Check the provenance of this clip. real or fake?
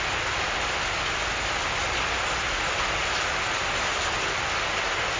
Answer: real